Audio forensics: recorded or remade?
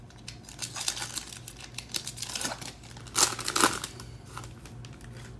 recorded